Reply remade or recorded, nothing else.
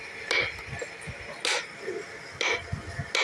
recorded